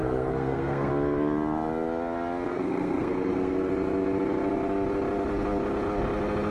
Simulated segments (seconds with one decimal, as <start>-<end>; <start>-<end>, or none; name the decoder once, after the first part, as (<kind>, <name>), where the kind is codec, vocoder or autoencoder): 0.0-0.9 (codec, SNAC); 2.5-3.7